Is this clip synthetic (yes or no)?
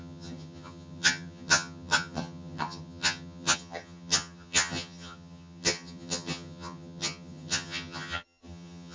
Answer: yes